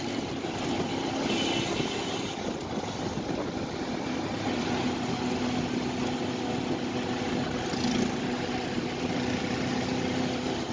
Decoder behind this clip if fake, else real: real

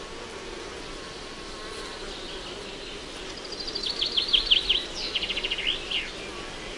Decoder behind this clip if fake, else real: real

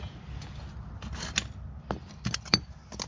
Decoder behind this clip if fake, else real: real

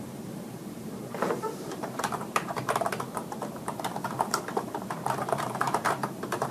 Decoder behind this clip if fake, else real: fake, vocoder, BigVGAN v2